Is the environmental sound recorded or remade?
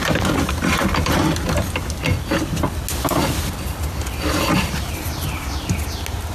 recorded